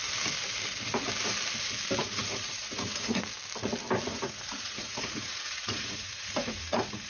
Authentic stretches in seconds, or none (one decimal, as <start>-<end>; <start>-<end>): 0.0-2.0; 3.2-4.1